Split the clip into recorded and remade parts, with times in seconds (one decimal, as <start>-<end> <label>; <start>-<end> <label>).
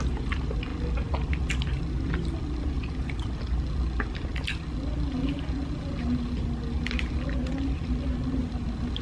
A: 0.0-9.0 recorded